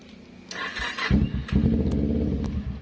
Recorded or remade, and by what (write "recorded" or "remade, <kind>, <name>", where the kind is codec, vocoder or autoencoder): recorded